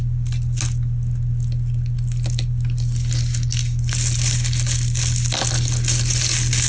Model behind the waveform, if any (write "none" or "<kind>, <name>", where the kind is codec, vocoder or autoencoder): none